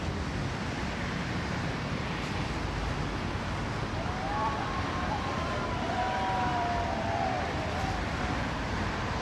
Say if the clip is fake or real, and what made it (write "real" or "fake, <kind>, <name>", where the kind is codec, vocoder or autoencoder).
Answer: fake, vocoder, BigVGAN v2